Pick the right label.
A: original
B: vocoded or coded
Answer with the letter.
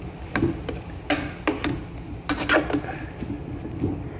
A